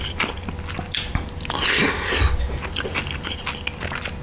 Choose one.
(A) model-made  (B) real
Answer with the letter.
B